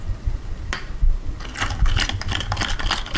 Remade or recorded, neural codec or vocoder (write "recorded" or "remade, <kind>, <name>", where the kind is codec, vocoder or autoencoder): recorded